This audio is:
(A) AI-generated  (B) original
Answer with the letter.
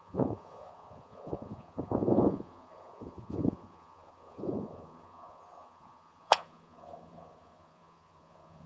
A